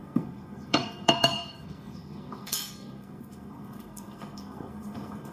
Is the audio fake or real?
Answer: fake